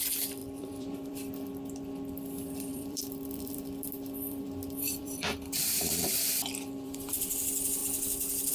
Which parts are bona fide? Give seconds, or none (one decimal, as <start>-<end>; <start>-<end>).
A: 0.0-0.4; 1.3-2.7; 7.2-8.5